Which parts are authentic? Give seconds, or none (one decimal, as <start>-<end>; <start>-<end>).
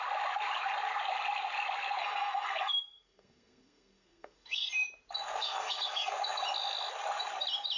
0.0-2.0; 4.7-5.4; 6.1-7.8